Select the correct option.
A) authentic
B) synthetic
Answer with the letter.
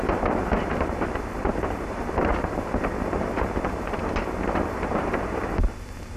B